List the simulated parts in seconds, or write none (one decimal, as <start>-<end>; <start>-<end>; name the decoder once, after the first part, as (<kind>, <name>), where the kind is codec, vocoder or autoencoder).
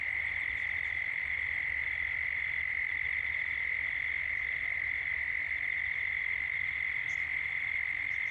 none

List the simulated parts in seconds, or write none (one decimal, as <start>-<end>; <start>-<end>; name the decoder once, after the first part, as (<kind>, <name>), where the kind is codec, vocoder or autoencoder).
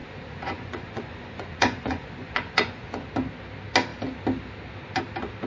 0.0-3.1 (vocoder, Vocos)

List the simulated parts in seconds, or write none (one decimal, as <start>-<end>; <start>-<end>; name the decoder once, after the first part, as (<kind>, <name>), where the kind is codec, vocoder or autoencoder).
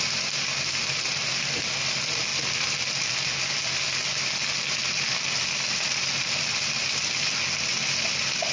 none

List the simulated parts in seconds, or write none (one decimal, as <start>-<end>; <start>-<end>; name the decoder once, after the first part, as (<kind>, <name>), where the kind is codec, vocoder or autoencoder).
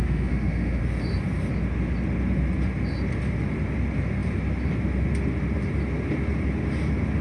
0.0-0.8 (autoencoder, DAC-VAE)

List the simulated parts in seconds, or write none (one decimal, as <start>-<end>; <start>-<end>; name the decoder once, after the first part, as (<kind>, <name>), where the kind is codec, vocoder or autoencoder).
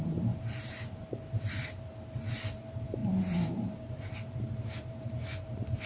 0.0-1.9 (vocoder, BigVGAN v2); 2.5-5.9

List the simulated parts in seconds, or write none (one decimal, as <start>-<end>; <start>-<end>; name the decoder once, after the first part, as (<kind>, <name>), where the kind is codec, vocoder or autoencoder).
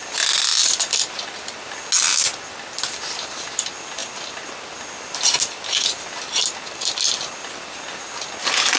none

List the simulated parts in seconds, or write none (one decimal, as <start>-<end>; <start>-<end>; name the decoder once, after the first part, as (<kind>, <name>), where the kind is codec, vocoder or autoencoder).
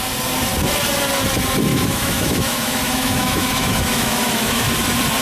1.7-4.7 (autoencoder, DAC-VAE)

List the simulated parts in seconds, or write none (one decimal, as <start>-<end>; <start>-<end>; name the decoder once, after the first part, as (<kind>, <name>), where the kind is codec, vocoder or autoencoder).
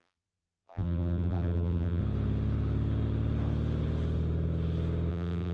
0.0-2.0 (vocoder, BigVGAN v2); 5.1-5.5